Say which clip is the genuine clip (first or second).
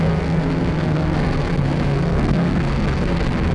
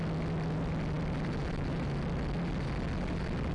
second